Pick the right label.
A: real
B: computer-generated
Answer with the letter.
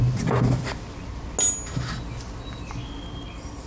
A